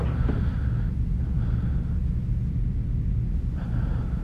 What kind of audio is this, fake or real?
real